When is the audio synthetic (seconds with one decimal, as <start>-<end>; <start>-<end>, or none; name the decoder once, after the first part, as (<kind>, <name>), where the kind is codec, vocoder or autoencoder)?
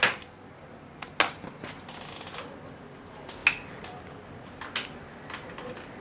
none